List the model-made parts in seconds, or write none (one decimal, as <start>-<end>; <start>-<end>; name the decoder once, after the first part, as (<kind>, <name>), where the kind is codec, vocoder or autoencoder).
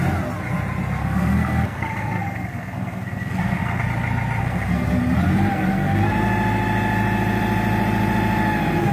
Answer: 1.0-3.8 (codec, SNAC); 4.4-5.0; 5.5-6.1